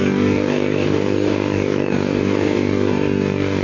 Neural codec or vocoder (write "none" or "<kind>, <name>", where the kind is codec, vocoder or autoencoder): codec, DAC